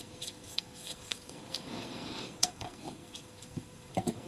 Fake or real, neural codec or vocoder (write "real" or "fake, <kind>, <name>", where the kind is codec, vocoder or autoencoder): fake, codec, SNAC